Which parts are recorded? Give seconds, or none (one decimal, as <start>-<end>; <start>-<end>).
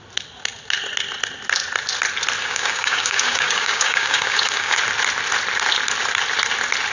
0.0-2.4; 4.8-6.9